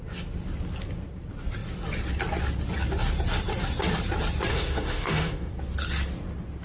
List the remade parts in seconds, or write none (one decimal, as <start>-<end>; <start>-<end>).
4.5-5.5